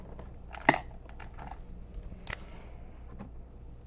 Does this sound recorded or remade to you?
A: recorded